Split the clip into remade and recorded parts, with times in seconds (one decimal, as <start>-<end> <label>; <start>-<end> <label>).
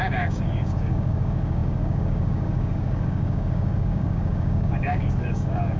0.0-5.8 remade